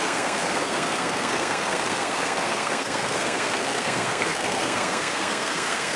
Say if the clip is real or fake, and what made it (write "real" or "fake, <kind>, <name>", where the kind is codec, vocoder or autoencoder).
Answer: fake, codec, SNAC